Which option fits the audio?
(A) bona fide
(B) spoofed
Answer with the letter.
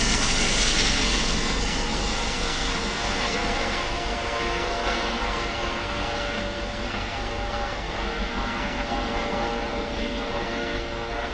B